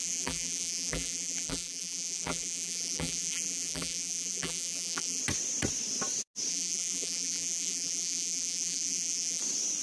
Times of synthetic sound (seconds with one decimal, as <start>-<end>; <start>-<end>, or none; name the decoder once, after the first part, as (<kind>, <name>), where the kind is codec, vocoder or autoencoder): 0.0-5.2 (vocoder, BigVGAN v2); 6.5-9.4